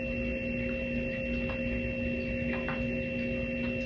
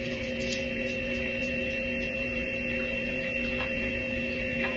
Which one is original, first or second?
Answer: first